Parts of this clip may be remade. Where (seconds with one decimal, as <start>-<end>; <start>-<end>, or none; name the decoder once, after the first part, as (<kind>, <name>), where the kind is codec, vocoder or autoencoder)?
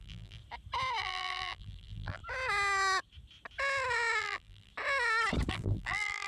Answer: 0.0-0.4 (vocoder, BigVGAN v2); 1.0-2.2; 4.2-4.7; 5.5-6.3